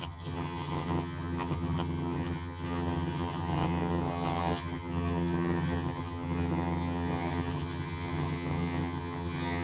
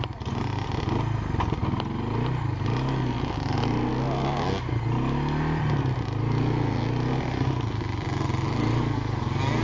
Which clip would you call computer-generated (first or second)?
first